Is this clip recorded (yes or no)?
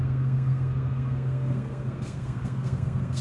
no